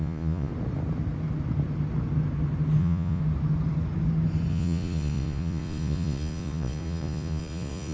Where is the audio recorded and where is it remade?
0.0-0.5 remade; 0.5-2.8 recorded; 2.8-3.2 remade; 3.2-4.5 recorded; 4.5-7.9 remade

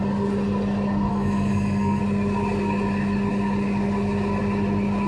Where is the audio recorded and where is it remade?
0.0-1.1 recorded; 1.1-2.0 remade; 2.0-5.1 recorded

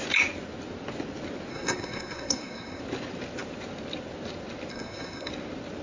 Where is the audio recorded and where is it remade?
0.0-1.5 recorded; 1.5-2.8 remade; 2.8-4.7 recorded; 4.7-5.3 remade; 5.3-5.8 recorded

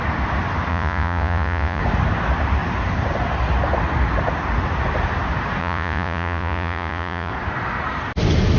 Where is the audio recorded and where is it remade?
0.0-0.7 recorded; 0.7-1.8 remade; 1.8-5.6 recorded; 5.6-7.3 remade; 7.3-8.6 recorded

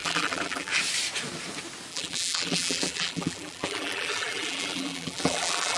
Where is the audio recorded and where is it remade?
0.0-0.7 remade; 0.7-1.9 recorded; 1.9-5.8 remade